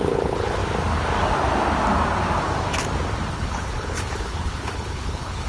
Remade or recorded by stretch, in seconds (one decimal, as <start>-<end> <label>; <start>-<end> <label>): 0.0-0.6 remade; 0.6-3.3 recorded; 3.3-5.5 remade